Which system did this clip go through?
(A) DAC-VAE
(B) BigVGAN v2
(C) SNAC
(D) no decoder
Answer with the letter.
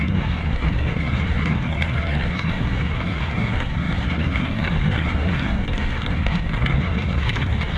C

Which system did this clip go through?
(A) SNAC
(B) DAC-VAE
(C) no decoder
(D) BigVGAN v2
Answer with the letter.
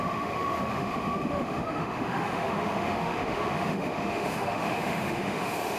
B